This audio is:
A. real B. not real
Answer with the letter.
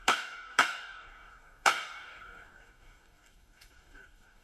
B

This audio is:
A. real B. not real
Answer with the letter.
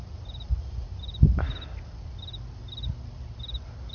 A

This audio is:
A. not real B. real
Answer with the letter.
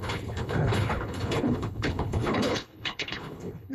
A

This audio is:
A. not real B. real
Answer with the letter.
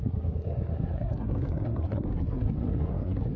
A